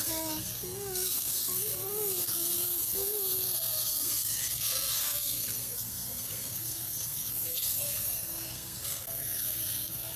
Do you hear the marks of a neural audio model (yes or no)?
yes